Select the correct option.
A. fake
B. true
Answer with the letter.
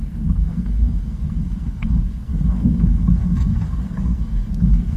A